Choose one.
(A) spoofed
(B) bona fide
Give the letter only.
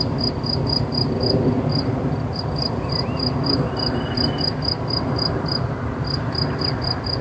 B